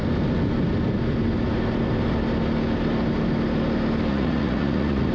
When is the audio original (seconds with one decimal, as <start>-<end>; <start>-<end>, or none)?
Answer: 0.0-4.1